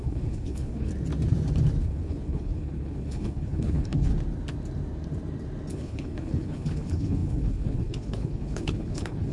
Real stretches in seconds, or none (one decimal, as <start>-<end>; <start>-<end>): 0.9-1.8; 4.1-5.7